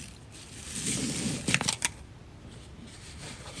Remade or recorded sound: recorded